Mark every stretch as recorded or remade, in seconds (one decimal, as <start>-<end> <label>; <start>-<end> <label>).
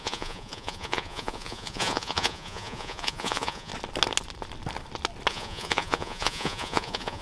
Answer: 0.0-3.7 remade; 3.7-5.3 recorded; 5.3-7.2 remade